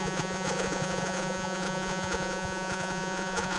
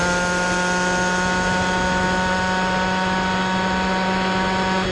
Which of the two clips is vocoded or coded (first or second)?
first